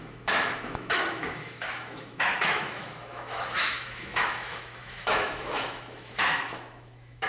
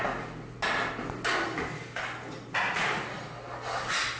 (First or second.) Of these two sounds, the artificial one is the first